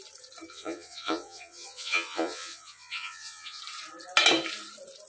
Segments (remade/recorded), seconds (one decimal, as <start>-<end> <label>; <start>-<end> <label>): 0.0-0.5 recorded; 0.5-3.6 remade; 3.6-5.1 recorded